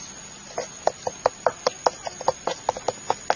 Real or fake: real